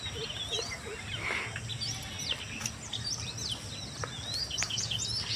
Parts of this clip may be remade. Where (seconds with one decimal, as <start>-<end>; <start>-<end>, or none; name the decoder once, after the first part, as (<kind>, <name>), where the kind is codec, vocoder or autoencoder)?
none